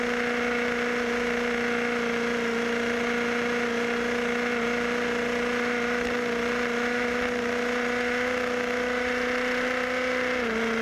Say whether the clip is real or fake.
real